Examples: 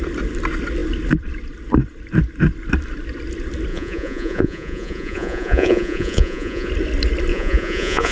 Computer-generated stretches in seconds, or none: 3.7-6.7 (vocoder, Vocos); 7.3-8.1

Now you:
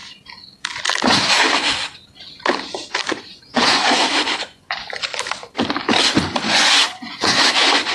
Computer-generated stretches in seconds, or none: 3.1-5.1 (vocoder, Vocos); 6.4-7.9

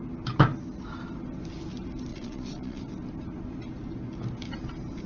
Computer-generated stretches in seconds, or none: 2.1-2.8 (vocoder, Vocos)

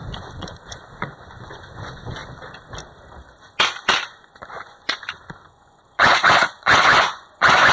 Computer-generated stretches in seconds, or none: 0.0-2.2 (vocoder, Vocos); 4.2-7.7

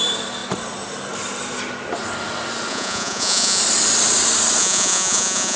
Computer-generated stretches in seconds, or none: 2.7-3.6 (vocoder, Vocos); 4.6-5.6

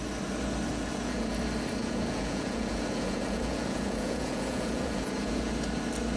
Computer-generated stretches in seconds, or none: 0.7-1.4 (vocoder, Vocos); 1.8-5.5

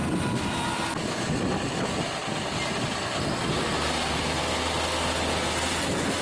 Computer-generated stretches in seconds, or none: none

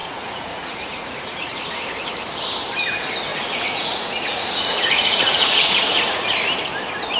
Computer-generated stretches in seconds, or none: 0.0-1.9 (vocoder, Vocos); 3.3-6.3